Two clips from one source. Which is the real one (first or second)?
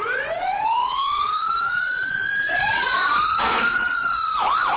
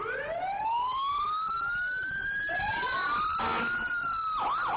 second